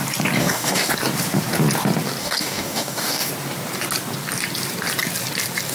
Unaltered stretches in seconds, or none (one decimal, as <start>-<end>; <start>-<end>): 0.0-0.4; 0.9-2.2; 3.3-5.7